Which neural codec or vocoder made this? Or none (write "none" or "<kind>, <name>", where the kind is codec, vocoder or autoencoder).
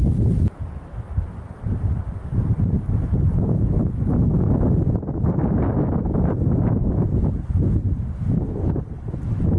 none